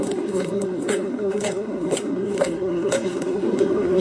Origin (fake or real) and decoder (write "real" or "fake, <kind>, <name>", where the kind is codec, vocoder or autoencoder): fake, codec, SNAC